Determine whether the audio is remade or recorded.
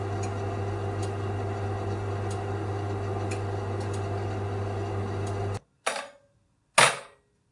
recorded